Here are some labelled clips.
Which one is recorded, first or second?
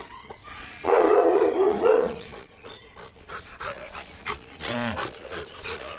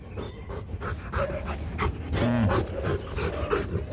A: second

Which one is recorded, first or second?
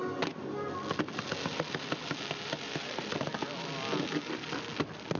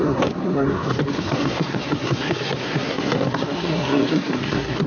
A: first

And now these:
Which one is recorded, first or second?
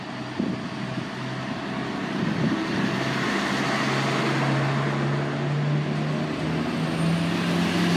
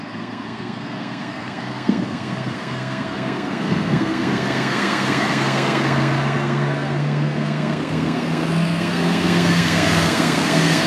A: first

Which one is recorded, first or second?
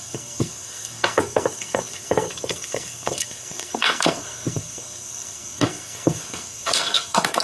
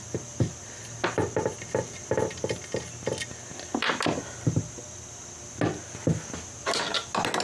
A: second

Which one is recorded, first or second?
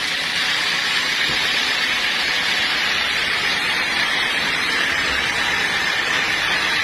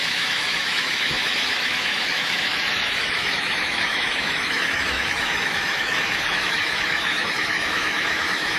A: first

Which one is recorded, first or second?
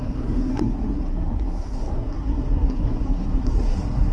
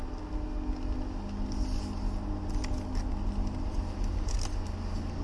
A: second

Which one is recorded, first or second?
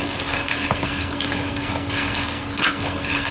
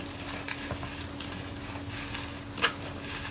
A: second